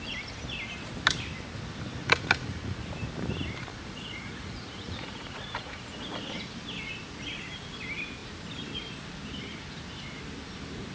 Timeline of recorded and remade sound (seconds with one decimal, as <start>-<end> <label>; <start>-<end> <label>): 0.0-2.0 recorded; 2.0-2.8 remade; 2.8-3.7 recorded; 3.7-5.8 remade; 5.8-10.9 recorded